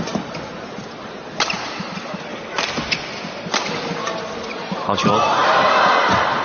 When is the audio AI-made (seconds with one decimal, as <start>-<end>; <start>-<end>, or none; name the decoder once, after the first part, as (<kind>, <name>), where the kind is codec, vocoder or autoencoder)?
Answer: 0.0-2.3 (vocoder, BigVGAN v2); 3.7-6.4